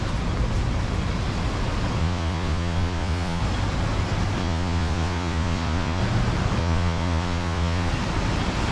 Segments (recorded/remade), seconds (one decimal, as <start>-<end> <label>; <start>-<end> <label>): 0.0-2.0 recorded; 2.0-3.4 remade; 3.4-4.4 recorded; 4.4-6.0 remade; 6.0-6.6 recorded; 6.6-7.9 remade; 7.9-8.7 recorded